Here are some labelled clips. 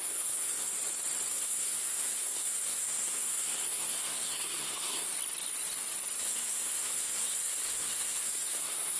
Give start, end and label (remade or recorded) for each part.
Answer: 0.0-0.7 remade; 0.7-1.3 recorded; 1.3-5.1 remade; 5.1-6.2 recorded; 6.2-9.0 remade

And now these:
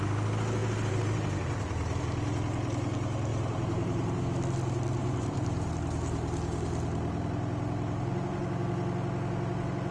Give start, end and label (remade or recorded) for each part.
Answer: 0.0-0.6 recorded; 0.6-2.0 remade; 2.0-3.3 recorded; 3.3-4.2 remade; 4.2-5.0 recorded; 5.0-5.7 remade; 5.7-9.9 recorded